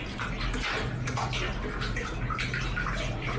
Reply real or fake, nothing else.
real